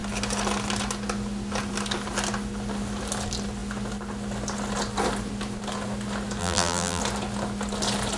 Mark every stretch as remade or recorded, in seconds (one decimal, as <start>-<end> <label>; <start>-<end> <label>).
0.0-6.4 recorded; 6.4-7.0 remade; 7.0-8.2 recorded